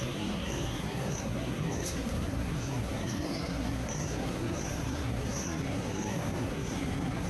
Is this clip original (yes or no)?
no